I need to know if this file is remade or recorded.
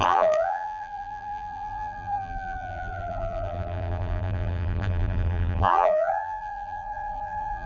remade